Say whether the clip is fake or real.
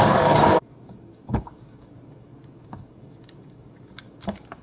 fake